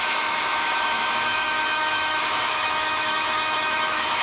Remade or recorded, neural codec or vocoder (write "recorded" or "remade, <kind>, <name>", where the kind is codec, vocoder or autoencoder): remade, autoencoder, DAC-VAE